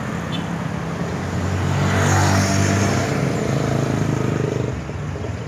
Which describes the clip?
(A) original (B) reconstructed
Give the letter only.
A